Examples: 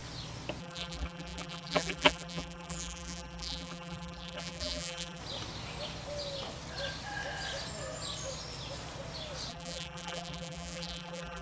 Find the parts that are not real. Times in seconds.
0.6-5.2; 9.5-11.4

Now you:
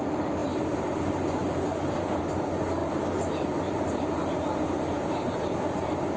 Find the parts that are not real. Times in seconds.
0.4-2.2; 2.8-4.7

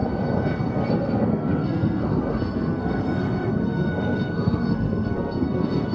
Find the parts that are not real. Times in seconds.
0.7-5.9

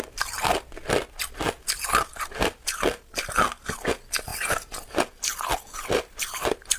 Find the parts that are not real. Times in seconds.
none